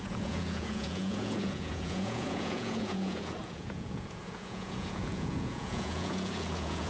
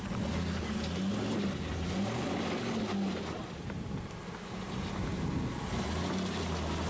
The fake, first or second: first